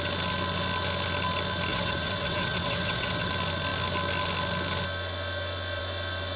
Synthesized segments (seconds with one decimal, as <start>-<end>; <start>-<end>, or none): 1.7-3.3